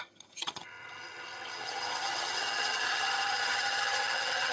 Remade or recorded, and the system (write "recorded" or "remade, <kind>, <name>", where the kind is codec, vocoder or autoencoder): remade, vocoder, HiFi-GAN